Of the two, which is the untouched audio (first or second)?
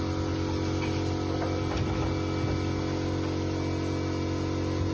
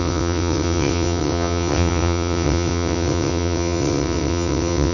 first